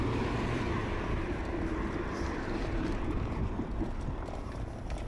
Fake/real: fake